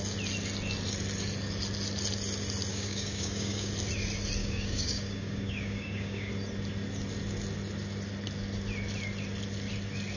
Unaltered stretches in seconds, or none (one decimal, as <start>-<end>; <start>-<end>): 0.0-2.7; 3.7-4.4; 6.3-10.2

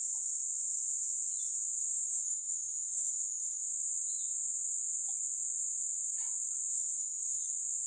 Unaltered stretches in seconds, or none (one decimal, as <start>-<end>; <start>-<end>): 0.0-1.8; 3.7-6.7; 7.5-7.9

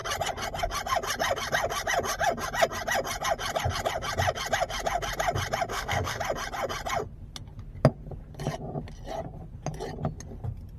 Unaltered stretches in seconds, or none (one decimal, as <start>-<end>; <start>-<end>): 0.0-5.7; 6.2-10.8

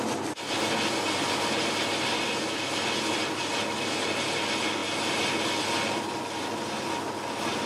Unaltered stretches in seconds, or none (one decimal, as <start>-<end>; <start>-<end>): 0.0-7.7

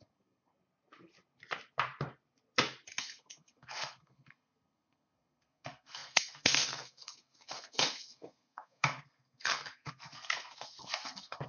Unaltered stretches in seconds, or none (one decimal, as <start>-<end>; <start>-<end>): 0.5-3.0

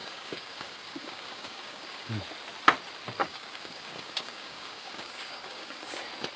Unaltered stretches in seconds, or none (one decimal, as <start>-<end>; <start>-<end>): 2.1-3.2; 6.0-6.4

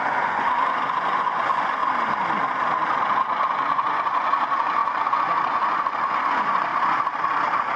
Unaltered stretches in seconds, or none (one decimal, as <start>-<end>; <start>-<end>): 1.8-3.2; 6.7-7.8

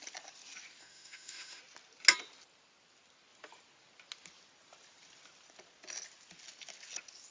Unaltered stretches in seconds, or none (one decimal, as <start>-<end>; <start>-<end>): 0.0-0.8; 1.6-7.3